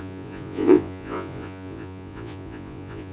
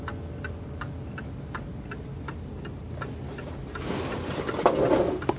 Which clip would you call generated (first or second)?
first